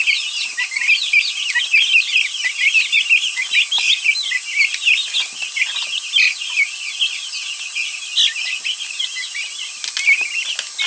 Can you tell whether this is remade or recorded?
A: recorded